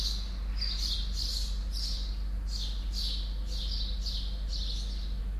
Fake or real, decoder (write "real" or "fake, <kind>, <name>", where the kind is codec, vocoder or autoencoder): real